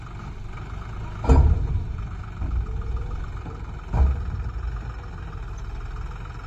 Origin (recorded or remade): recorded